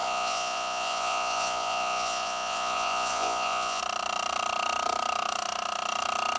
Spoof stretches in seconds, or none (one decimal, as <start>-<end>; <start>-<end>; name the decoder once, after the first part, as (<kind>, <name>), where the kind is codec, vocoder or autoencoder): 0.0-3.8 (vocoder, Vocos)